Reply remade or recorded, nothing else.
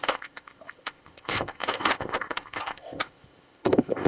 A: remade